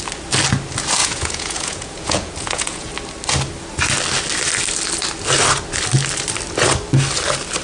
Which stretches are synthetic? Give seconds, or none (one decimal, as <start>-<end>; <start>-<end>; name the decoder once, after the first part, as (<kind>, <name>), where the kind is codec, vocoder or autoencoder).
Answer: 1.0-2.9 (vocoder, Vocos)